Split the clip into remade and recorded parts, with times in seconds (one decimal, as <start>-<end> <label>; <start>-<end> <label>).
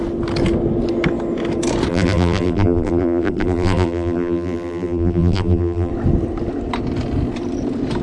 0.0-1.9 recorded; 1.9-5.9 remade; 5.9-8.0 recorded